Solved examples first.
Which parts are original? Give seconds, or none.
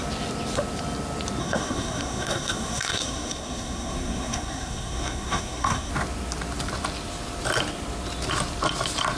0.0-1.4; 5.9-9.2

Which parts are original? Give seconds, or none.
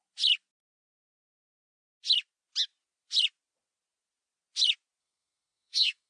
0.0-5.0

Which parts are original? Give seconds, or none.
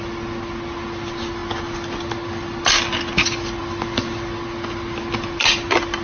0.0-6.0